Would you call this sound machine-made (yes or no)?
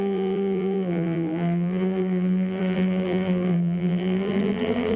yes